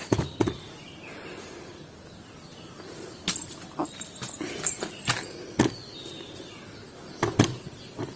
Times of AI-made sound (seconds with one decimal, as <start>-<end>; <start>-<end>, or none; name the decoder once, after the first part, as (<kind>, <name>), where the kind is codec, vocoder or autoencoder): none

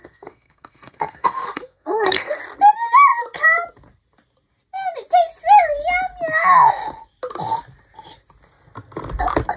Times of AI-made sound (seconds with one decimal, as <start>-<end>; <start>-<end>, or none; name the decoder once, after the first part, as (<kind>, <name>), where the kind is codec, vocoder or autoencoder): 0.0-2.4 (codec, SNAC)

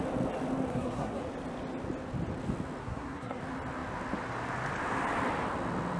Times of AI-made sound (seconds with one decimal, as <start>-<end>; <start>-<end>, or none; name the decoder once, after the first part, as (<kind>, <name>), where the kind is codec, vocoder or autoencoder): 0.7-1.2 (codec, SNAC); 2.8-3.4

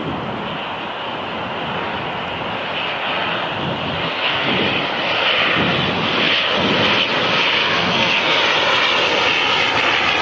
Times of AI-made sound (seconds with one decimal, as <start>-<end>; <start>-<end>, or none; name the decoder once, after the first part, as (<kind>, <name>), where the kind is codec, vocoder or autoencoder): 4.0-4.5 (codec, SNAC); 7.6-8.4

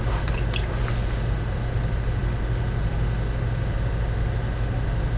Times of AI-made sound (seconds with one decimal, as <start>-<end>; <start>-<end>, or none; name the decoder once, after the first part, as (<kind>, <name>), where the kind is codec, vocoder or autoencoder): none

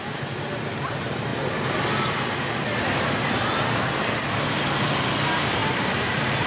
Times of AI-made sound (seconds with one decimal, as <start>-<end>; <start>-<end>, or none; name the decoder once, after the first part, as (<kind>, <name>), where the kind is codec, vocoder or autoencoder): none